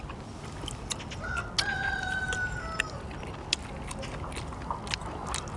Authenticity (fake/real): real